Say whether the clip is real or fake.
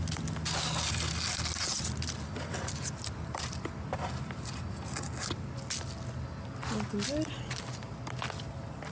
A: real